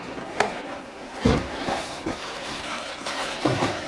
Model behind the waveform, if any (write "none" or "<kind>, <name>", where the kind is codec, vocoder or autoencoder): codec, SNAC